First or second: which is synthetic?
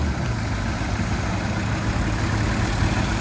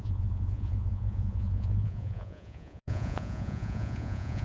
second